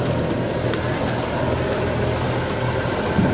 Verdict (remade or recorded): recorded